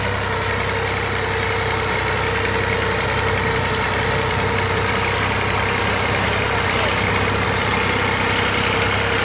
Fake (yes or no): no